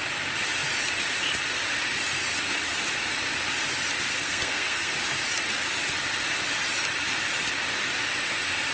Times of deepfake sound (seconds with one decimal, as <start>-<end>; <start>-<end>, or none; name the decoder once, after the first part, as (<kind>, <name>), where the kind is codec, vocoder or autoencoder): 4.1-4.9 (codec, SNAC)